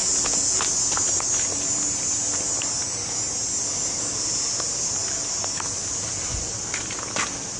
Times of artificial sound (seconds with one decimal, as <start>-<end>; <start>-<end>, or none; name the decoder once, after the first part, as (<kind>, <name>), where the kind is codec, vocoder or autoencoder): 0.0-0.6 (vocoder, Vocos)